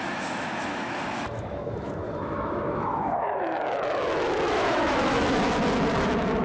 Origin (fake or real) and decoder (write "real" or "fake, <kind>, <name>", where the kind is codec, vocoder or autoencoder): fake, autoencoder, DAC-VAE